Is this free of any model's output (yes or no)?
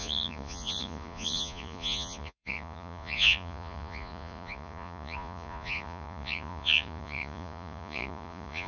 no